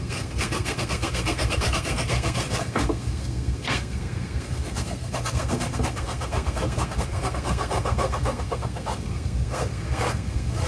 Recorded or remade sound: remade